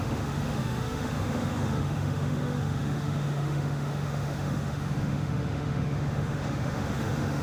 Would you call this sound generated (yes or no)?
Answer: yes